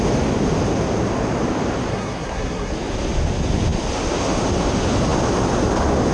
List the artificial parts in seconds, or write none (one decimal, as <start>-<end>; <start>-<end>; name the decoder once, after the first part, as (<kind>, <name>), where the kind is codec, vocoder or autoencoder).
1.9-2.7 (codec, SNAC)